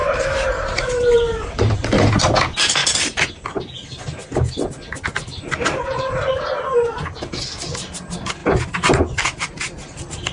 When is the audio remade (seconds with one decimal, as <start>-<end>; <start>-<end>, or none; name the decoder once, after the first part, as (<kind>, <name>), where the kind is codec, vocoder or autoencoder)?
0.0-2.1 (vocoder, BigVGAN v2); 2.8-3.3